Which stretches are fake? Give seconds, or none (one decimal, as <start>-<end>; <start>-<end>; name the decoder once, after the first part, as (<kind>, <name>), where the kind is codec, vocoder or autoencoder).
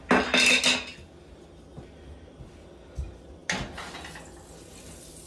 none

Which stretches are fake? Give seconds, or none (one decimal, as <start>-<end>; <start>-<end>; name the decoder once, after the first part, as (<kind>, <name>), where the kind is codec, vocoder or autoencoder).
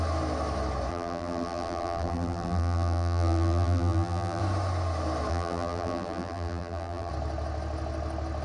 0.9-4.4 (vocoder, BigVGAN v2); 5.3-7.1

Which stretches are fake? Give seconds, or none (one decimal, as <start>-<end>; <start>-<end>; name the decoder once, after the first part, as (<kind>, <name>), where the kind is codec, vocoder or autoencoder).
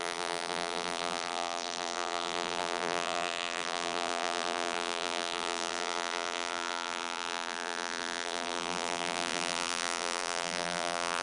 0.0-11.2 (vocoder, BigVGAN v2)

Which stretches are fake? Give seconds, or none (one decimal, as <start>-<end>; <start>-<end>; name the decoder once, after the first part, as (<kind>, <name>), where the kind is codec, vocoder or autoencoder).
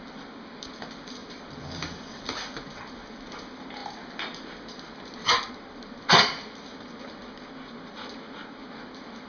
none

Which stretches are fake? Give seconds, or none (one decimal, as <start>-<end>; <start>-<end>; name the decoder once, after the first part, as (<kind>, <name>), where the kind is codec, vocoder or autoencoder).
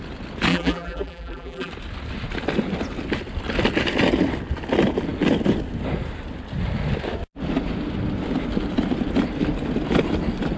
0.5-1.7 (vocoder, BigVGAN v2)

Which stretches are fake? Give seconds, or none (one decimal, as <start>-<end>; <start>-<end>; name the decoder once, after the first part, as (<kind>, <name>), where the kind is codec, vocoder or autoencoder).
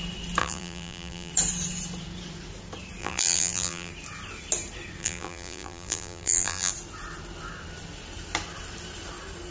0.4-1.3 (vocoder, BigVGAN v2); 3.0-3.9; 5.0-6.7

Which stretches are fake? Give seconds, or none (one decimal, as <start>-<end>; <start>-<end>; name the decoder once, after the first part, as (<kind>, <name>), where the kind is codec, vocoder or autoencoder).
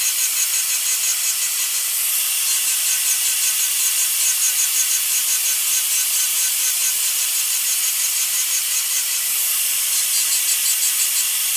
0.0-1.1 (vocoder, BigVGAN v2); 2.7-11.6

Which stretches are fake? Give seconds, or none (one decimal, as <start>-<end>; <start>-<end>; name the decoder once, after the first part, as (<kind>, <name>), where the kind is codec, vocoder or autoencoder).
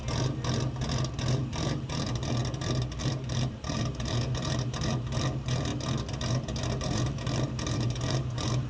1.3-2.4 (vocoder, BigVGAN v2); 3.0-5.7; 6.8-8.7